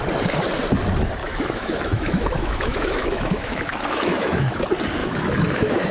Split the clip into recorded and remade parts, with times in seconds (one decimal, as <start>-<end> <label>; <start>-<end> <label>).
0.0-1.2 recorded; 1.2-4.6 remade; 4.6-5.0 recorded; 5.0-5.9 remade